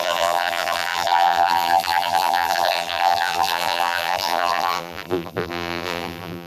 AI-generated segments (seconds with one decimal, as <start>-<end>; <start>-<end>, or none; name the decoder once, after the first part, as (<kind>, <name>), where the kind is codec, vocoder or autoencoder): 0.0-6.5 (vocoder, BigVGAN v2)